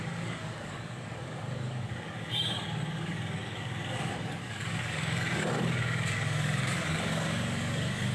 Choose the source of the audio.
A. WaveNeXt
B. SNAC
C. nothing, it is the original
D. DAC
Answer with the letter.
D